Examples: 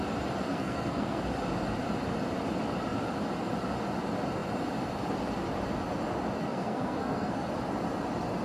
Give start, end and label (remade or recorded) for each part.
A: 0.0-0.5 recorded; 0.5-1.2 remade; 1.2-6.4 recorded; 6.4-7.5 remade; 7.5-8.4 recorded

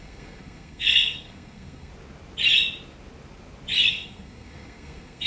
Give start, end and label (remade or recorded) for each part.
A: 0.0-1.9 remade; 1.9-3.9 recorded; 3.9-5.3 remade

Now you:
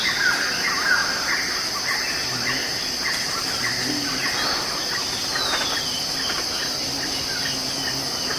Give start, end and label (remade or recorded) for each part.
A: 0.0-8.4 recorded

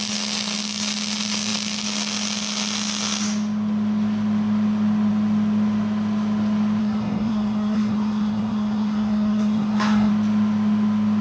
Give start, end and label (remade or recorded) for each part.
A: 0.0-6.8 recorded; 6.8-10.1 remade; 10.1-11.2 recorded

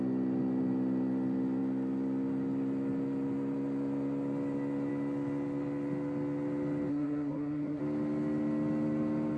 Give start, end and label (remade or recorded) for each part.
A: 0.0-6.9 recorded; 6.9-7.8 remade; 7.8-9.4 recorded

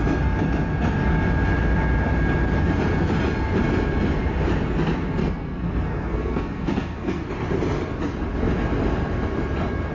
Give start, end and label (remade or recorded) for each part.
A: 0.0-5.2 recorded; 5.2-7.3 remade; 7.3-9.9 recorded

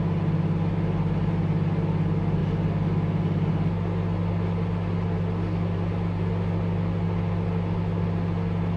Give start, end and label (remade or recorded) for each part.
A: 0.0-8.8 recorded